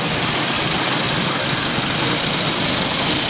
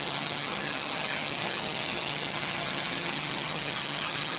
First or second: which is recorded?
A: first